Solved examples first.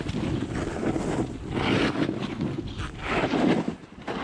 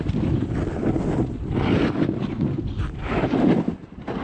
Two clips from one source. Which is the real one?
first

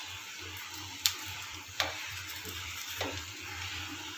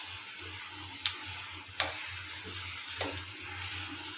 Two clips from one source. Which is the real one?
second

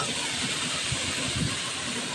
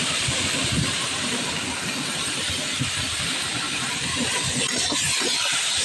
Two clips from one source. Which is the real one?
first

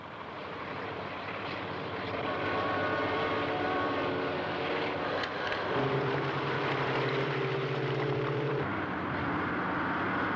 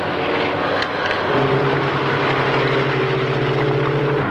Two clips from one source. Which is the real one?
second